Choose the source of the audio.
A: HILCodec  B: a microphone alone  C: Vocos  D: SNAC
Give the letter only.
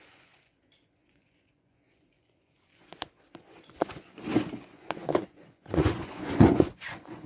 C